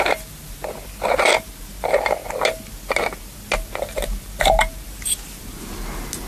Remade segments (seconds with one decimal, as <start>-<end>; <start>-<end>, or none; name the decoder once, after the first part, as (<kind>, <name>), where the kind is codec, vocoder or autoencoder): 0.0-2.2 (vocoder, BigVGAN v2); 3.9-6.3